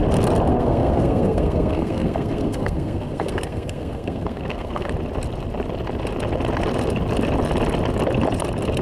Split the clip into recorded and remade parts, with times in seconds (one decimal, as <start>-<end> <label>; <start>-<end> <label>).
0.0-0.5 recorded; 0.5-4.9 remade; 4.9-8.8 recorded